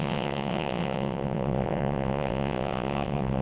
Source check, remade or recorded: remade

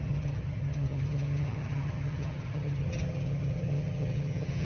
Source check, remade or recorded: remade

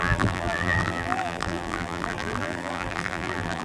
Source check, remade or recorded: remade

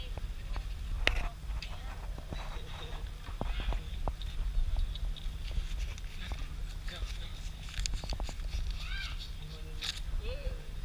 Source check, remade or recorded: recorded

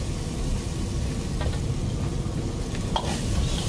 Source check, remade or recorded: recorded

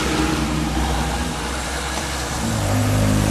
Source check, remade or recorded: remade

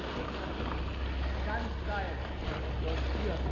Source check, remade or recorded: recorded